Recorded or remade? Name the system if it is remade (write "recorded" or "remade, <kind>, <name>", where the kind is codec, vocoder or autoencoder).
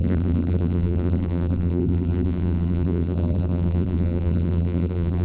remade, vocoder, BigVGAN v2